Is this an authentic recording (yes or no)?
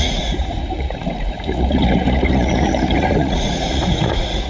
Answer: no